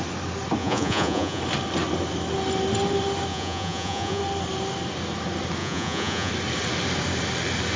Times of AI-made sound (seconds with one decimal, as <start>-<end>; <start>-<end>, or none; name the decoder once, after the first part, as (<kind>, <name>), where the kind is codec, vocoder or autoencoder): 0.6-1.4 (vocoder, Vocos); 3.3-4.2; 5.6-6.3